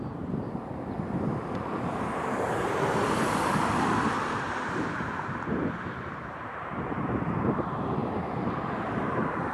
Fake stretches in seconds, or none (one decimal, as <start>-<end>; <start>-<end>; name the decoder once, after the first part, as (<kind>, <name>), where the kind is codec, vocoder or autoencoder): 0.0-8.0 (vocoder, BigVGAN v2); 8.8-9.5